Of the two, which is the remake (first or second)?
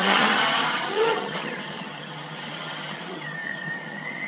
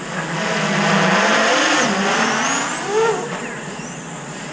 first